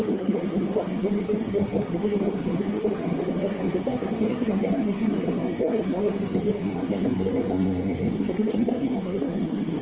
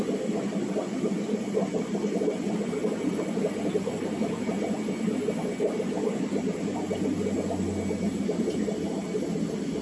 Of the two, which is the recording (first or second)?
second